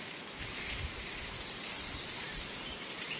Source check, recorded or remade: recorded